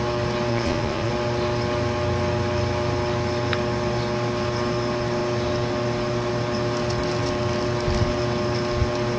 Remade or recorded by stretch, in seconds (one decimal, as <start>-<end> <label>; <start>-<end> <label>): 0.0-0.5 recorded; 0.5-1.1 remade; 1.1-9.2 recorded